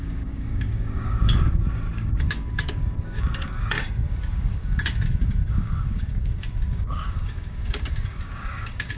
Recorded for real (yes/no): no